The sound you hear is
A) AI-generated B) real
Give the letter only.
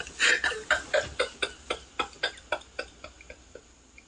B